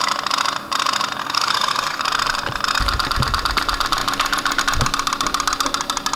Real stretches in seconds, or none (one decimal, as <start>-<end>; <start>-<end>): 0.0-1.2; 2.0-6.2